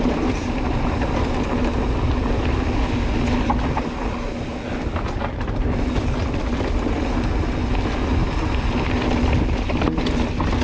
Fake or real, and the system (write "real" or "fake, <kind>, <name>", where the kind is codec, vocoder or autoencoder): real